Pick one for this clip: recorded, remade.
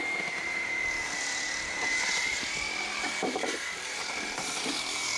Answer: remade